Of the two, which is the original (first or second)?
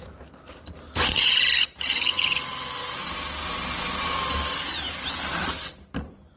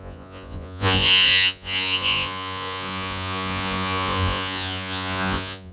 first